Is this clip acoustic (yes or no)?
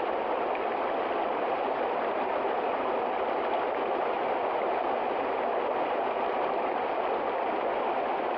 yes